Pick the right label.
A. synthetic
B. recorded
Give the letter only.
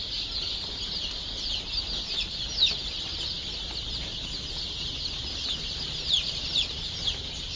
B